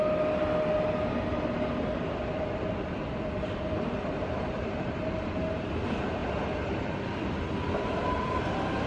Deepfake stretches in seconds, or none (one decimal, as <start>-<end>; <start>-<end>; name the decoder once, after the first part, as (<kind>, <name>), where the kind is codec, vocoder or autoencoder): none